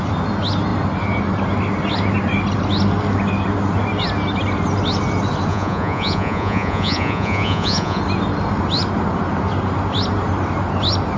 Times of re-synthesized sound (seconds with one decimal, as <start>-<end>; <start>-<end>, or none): 5.5-8.0